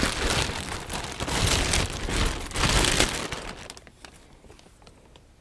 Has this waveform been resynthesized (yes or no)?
no